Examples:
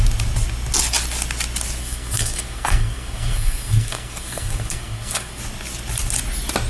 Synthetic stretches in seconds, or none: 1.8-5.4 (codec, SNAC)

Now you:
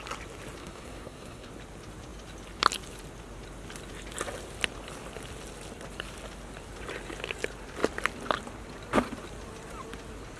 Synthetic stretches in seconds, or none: 0.6-1.5 (codec, SNAC)

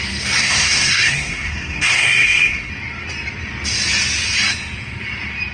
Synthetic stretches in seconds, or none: 0.4-2.7 (codec, SNAC)

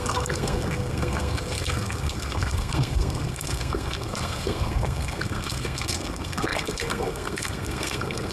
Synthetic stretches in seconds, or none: 0.0-8.3 (codec, SNAC)

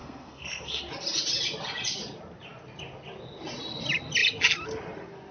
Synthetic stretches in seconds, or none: 0.0-0.8 (codec, SNAC)

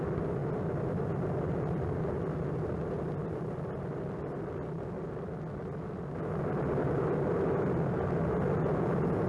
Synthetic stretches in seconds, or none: none

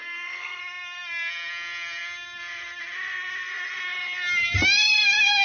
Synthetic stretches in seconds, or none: 0.0-0.6 (codec, SNAC)